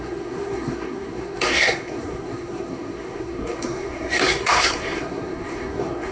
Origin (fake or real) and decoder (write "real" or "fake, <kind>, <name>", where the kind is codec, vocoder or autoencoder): fake, codec, SNAC